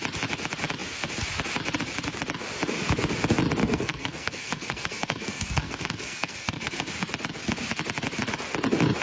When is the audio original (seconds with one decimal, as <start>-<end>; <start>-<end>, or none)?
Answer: 0.0-3.6; 6.9-9.0